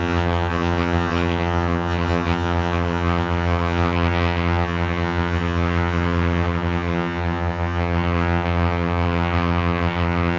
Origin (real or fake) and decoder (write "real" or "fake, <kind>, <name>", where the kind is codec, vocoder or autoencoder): fake, vocoder, HiFi-GAN